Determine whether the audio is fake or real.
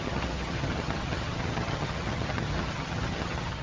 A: fake